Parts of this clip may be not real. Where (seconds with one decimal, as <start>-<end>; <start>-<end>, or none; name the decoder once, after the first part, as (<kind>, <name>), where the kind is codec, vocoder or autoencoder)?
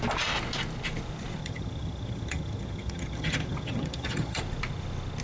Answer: 1.4-4.4 (vocoder, HiFi-GAN)